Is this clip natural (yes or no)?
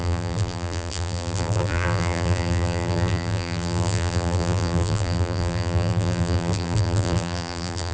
no